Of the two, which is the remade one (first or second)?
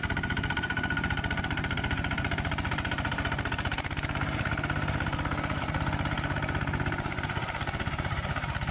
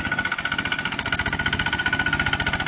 first